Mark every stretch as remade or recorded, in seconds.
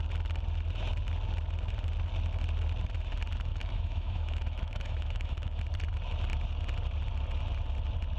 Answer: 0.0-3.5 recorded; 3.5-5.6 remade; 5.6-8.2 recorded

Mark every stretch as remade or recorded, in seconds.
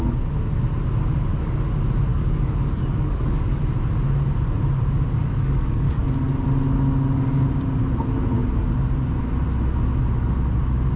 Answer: 0.0-2.1 recorded; 2.1-3.6 remade; 3.6-5.2 recorded; 5.2-6.0 remade; 6.0-11.0 recorded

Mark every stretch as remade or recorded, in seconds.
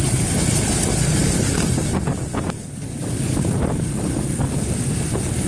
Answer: 0.0-5.5 recorded